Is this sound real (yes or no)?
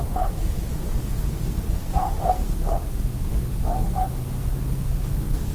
no